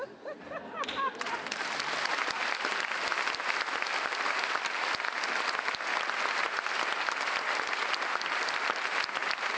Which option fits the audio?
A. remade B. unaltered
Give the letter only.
B